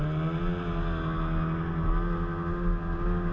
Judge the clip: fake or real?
real